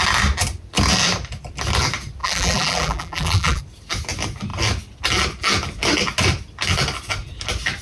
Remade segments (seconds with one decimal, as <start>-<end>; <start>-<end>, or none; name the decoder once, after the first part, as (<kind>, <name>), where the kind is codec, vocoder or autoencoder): 2.2-3.6 (vocoder, BigVGAN v2)